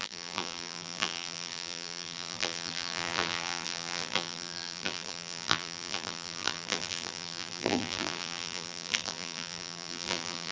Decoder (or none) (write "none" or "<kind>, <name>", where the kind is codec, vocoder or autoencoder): vocoder, BigVGAN v2